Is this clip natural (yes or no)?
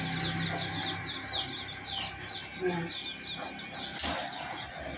yes